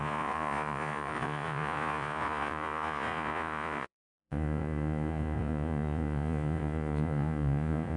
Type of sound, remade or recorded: remade